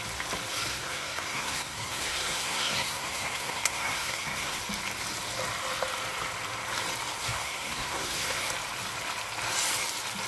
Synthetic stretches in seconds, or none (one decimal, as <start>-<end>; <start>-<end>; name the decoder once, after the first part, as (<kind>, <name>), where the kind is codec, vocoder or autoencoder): 0.7-4.6 (codec, SNAC); 7.2-8.5